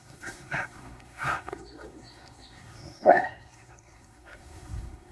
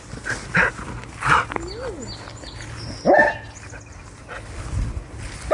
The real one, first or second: second